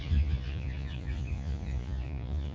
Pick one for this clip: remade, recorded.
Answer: remade